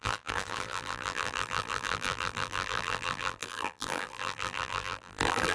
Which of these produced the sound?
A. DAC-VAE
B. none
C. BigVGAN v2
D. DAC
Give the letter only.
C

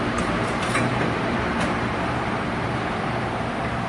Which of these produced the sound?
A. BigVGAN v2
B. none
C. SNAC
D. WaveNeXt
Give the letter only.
A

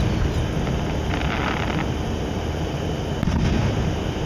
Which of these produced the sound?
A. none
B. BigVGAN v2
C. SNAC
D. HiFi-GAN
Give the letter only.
A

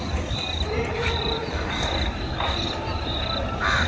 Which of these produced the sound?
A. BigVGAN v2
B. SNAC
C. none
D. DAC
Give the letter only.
A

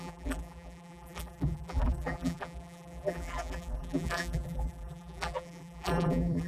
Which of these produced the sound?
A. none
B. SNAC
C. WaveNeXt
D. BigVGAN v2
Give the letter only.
D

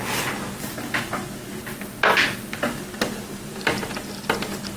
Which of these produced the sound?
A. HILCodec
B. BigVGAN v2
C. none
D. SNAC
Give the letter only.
C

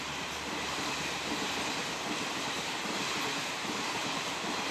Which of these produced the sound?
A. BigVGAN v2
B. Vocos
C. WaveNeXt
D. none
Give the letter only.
D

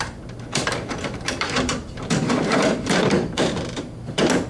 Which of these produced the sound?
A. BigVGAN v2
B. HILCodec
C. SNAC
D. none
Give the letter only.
A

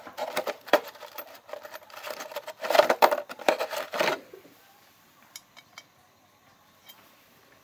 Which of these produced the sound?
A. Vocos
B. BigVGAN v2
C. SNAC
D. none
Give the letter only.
B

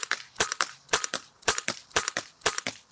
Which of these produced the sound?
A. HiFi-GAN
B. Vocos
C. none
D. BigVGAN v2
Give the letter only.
D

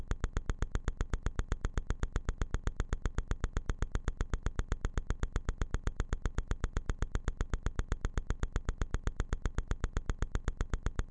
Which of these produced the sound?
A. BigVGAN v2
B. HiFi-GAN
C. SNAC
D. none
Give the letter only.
D